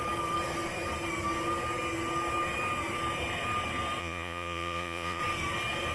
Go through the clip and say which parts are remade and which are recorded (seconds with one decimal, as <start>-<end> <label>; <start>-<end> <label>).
0.0-4.0 recorded; 4.0-5.2 remade; 5.2-5.9 recorded